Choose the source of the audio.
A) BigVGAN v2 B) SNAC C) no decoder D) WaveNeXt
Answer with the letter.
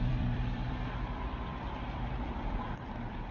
A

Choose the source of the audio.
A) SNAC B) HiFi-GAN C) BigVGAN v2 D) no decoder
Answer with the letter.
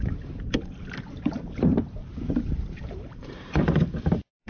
C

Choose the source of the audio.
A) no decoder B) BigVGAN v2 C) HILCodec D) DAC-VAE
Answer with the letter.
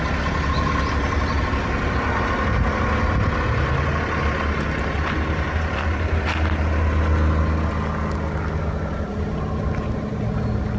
A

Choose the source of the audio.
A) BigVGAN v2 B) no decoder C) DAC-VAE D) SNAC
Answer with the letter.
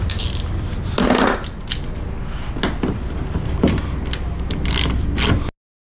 B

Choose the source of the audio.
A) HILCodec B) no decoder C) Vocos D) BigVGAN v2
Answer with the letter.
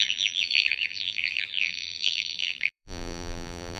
D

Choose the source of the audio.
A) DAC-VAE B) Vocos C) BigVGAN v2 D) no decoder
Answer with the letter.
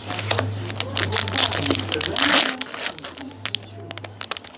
D